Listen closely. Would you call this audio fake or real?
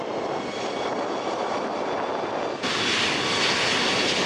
real